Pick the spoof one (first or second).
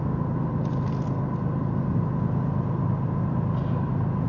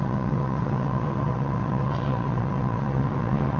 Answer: second